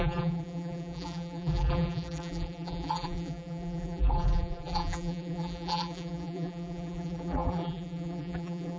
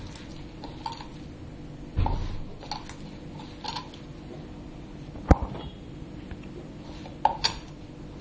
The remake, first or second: first